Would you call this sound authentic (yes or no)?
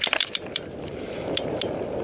yes